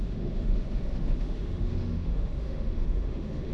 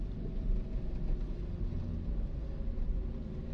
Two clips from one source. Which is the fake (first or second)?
first